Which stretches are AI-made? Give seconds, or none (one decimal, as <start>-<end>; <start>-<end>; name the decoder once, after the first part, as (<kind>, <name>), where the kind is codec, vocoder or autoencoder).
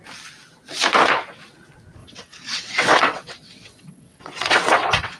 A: 2.0-5.2 (vocoder, WaveNeXt)